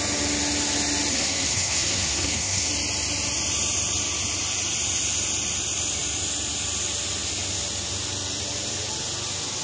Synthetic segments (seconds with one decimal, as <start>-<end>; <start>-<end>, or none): 1.1-2.7